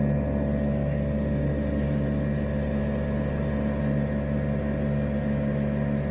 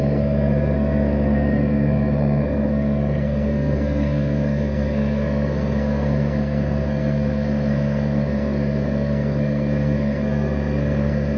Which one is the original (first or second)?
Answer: first